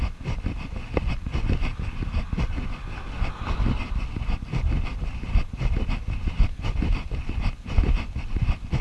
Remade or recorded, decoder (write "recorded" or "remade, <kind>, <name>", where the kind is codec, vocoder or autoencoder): recorded